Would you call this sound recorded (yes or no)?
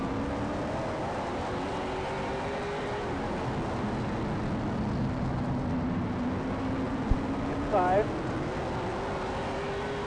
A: yes